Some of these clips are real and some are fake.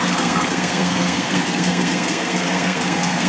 fake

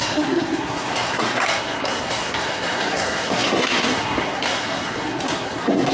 fake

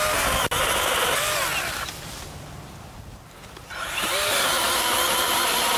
real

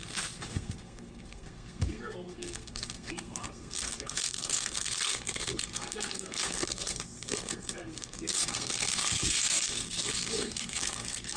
fake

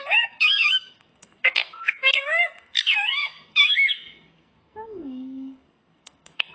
fake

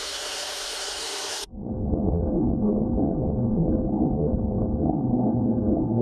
fake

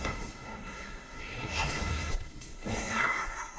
fake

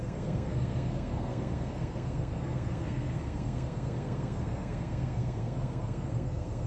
fake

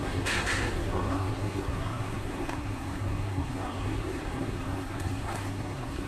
fake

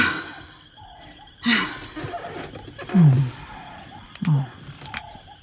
real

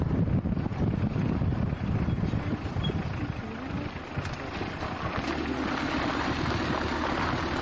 real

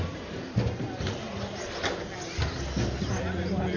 real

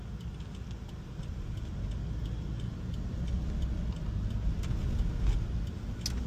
real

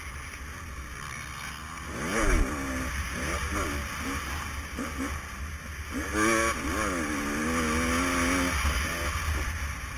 real